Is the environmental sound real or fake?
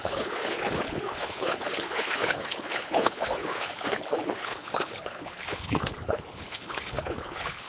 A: fake